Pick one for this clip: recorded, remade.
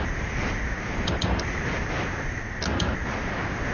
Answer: recorded